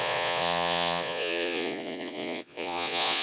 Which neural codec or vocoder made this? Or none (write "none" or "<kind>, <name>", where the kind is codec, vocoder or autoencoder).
vocoder, Vocos